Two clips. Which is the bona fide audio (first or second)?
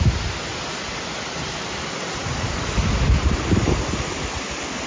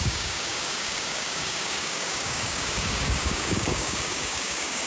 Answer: first